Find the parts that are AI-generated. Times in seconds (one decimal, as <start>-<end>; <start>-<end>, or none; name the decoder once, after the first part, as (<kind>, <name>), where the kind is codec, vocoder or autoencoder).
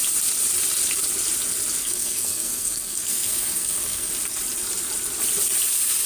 1.8-4.1 (codec, SNAC)